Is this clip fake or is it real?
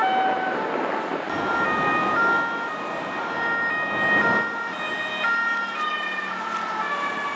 real